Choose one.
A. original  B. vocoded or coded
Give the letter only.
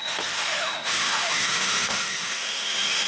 B